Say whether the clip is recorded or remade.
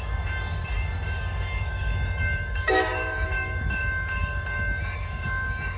remade